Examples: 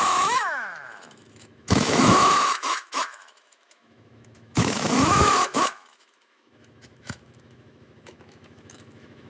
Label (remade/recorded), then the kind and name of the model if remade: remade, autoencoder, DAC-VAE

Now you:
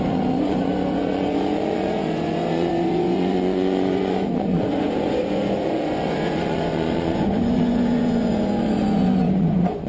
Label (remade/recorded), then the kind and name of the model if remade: remade, vocoder, Vocos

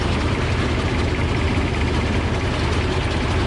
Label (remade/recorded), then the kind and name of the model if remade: recorded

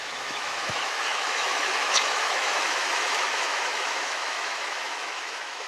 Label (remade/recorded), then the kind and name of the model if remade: remade, autoencoder, DAC-VAE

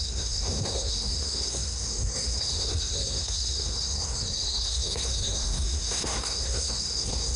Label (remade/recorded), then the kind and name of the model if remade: remade, codec, SNAC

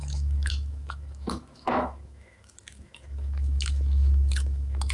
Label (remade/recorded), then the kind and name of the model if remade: remade, autoencoder, DAC-VAE